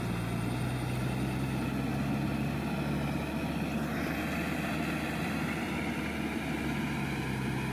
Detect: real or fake real